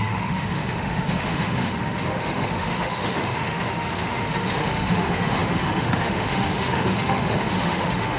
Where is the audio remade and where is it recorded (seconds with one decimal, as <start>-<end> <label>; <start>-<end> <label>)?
0.0-8.2 remade